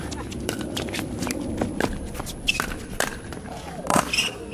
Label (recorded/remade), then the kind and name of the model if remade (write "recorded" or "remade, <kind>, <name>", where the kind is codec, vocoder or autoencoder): recorded